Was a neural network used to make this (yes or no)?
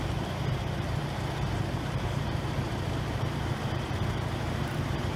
yes